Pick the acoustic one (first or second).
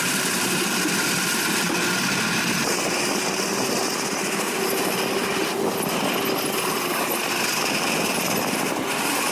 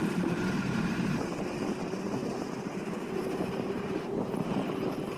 first